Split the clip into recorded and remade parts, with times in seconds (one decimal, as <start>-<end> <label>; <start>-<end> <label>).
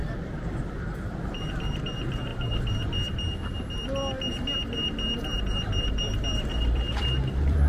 0.0-0.8 recorded; 0.8-2.3 remade; 2.3-5.4 recorded; 5.4-7.7 remade